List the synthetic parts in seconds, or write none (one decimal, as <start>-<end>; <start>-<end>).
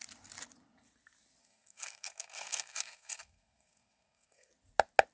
1.4-4.5